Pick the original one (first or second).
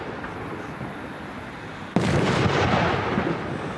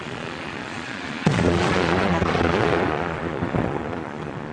first